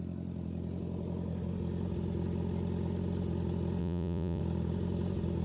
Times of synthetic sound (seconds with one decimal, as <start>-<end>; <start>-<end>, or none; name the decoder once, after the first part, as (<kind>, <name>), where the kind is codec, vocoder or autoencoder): 3.8-4.4 (vocoder, Vocos)